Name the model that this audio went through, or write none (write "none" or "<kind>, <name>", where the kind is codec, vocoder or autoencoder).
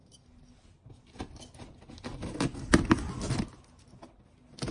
none